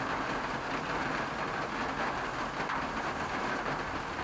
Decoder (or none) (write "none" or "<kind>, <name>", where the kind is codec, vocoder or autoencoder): none